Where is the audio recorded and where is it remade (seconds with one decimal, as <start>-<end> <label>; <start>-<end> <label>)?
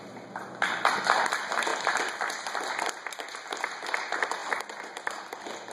0.0-4.4 recorded; 4.4-5.2 remade; 5.2-5.7 recorded